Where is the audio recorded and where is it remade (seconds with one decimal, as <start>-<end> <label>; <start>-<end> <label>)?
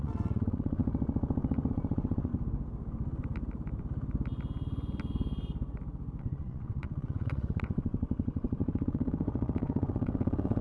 0.0-0.8 remade; 0.8-1.7 recorded; 1.7-2.3 remade; 2.3-6.2 recorded; 6.2-10.6 remade